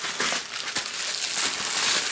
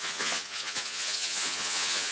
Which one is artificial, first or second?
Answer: second